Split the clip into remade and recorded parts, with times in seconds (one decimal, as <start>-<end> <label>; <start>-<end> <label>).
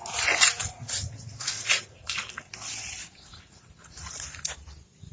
0.0-0.6 recorded; 0.6-2.5 remade; 2.5-3.0 recorded; 3.0-4.4 remade; 4.4-5.1 recorded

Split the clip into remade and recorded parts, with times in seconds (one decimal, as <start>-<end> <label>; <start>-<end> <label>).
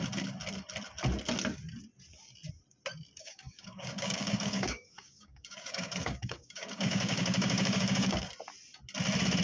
0.0-3.2 recorded; 3.2-8.3 remade; 8.3-9.4 recorded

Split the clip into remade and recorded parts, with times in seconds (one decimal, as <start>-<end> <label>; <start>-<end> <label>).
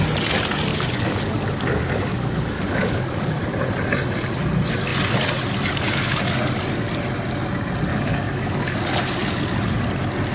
0.0-0.7 recorded; 0.7-3.4 remade; 3.4-7.9 recorded; 7.9-8.8 remade; 8.8-10.3 recorded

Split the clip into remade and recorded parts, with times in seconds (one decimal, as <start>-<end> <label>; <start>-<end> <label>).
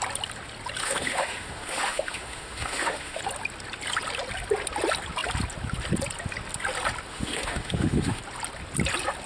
0.0-0.8 recorded; 0.8-3.2 remade; 3.2-7.1 recorded; 7.1-8.2 remade; 8.2-9.3 recorded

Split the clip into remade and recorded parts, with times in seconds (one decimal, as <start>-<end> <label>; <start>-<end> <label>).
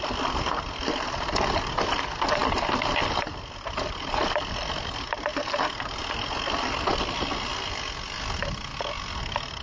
0.0-9.6 recorded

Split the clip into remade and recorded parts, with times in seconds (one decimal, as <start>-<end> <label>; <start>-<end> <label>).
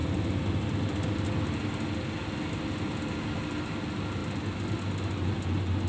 0.0-5.9 recorded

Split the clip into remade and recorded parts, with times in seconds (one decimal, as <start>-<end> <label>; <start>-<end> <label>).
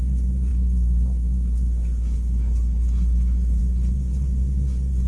0.0-5.1 recorded